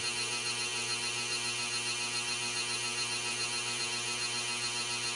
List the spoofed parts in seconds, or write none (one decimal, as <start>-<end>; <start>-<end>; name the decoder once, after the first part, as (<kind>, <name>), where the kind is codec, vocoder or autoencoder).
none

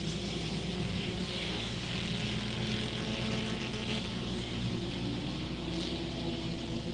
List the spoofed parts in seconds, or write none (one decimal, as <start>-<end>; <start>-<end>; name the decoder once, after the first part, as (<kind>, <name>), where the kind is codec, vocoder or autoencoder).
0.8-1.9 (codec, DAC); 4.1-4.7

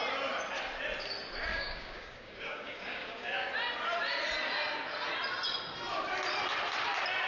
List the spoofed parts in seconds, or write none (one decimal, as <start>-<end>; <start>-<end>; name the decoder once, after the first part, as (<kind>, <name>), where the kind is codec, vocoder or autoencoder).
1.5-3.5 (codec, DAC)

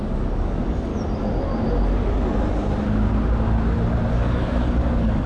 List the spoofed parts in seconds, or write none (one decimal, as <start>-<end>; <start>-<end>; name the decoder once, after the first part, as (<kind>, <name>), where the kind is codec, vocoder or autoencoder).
0.0-0.9 (codec, DAC); 4.1-5.3

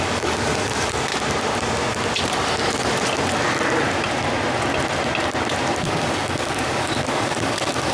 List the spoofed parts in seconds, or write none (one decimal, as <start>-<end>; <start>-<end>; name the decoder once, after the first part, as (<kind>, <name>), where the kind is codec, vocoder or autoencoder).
0.0-1.1 (codec, DAC); 5.8-7.9